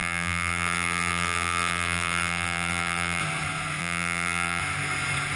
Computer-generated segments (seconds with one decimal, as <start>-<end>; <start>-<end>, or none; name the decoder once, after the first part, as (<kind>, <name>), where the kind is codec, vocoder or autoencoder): 0.0-3.2 (vocoder, BigVGAN v2); 3.8-4.6